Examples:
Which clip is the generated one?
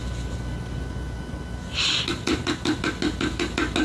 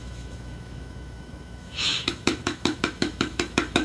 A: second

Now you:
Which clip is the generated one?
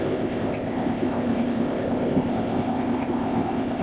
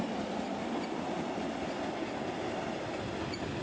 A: first